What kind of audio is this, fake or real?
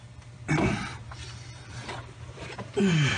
fake